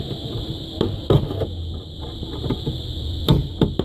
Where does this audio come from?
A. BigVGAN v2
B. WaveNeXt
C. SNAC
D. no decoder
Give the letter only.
D